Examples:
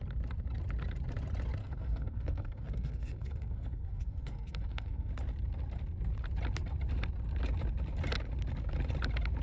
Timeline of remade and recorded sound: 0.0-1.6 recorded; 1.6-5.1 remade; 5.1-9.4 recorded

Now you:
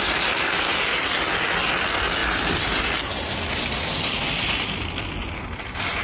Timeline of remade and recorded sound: 0.0-0.7 remade; 0.7-1.7 recorded; 1.7-6.0 remade

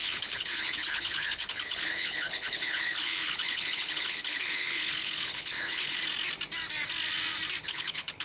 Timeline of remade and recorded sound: 0.0-6.0 remade; 6.0-7.6 recorded; 7.6-8.2 remade

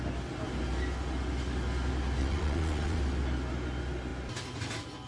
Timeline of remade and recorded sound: 0.0-2.2 recorded; 2.2-3.0 remade; 3.0-5.1 recorded

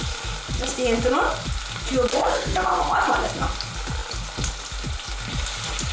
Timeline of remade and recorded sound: 0.0-2.1 recorded; 2.1-2.8 remade; 2.8-5.9 recorded

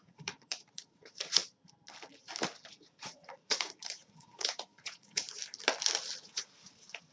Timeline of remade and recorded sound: 0.0-1.4 remade; 1.4-2.7 recorded; 2.7-5.4 remade; 5.4-6.2 recorded; 6.2-7.1 remade

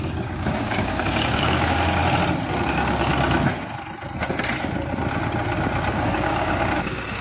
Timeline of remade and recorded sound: 0.0-2.0 remade; 2.0-2.7 recorded; 2.7-3.1 remade; 3.1-5.9 recorded; 5.9-7.2 remade